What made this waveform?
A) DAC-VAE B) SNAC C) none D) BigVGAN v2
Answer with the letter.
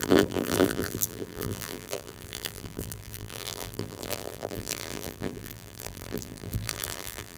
D